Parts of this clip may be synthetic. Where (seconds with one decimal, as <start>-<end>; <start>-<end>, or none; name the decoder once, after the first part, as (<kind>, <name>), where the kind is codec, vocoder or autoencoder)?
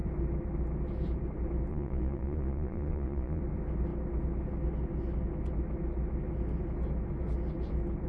1.7-3.4 (vocoder, Vocos)